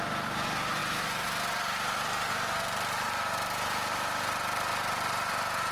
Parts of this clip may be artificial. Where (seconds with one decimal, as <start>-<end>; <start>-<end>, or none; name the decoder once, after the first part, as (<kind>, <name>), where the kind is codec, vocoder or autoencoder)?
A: 4.7-5.3 (vocoder, BigVGAN v2)